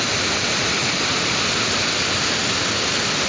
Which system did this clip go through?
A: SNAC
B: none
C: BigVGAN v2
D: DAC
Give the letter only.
B